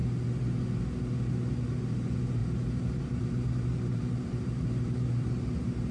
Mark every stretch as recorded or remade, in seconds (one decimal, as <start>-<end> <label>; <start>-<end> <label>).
0.0-2.4 recorded; 2.4-5.9 remade